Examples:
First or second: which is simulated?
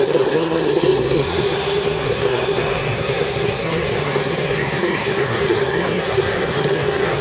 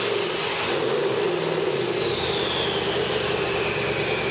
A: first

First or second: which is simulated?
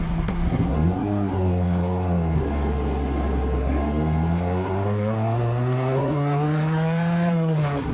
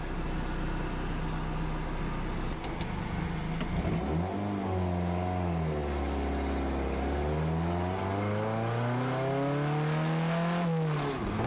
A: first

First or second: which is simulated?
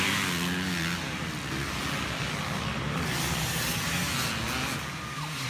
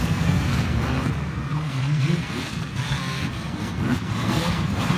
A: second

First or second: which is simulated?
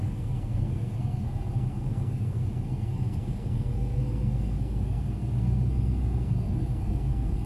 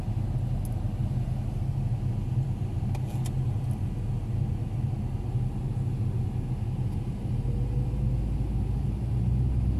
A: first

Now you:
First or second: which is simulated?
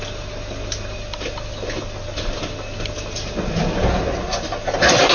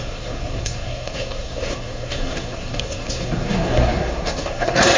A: second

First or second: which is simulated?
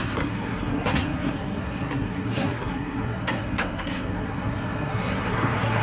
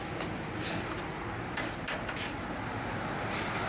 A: first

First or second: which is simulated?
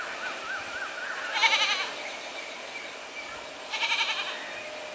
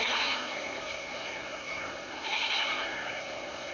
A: second